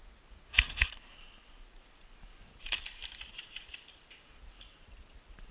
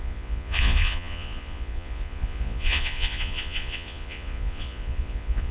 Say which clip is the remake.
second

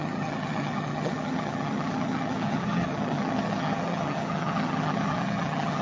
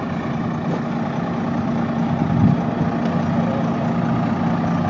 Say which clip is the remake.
first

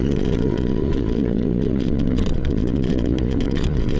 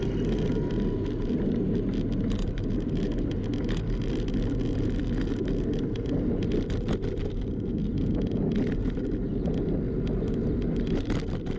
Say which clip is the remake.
first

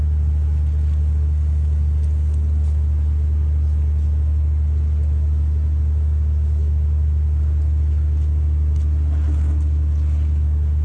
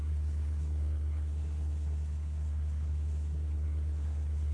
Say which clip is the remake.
second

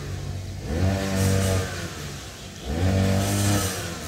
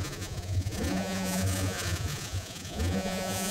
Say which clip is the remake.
second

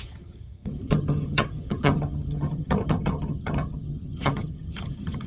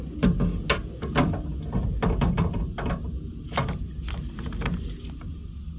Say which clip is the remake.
first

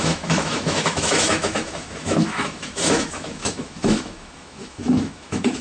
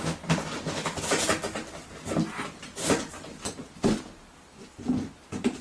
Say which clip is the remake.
first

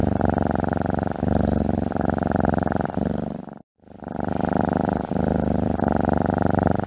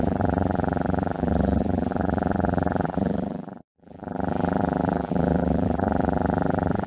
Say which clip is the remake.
second